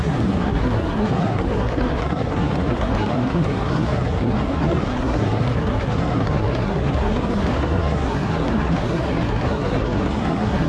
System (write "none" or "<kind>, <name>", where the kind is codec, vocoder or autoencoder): codec, SNAC